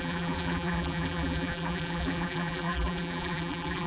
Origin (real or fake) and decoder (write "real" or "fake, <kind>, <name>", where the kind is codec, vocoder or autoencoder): fake, vocoder, BigVGAN v2